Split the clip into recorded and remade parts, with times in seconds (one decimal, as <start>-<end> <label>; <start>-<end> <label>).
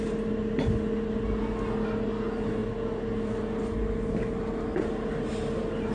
0.0-5.9 recorded